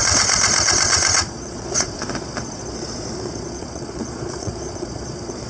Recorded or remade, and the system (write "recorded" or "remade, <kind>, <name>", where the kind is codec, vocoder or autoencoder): remade, vocoder, Vocos